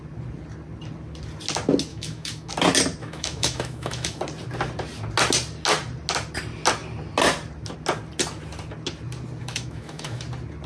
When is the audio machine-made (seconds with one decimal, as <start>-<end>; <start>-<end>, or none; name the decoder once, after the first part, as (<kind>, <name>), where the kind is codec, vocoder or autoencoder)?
1.9-2.5 (autoencoder, DAC-VAE); 3.0-4.2; 9.4-10.2